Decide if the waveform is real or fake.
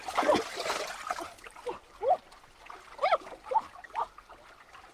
real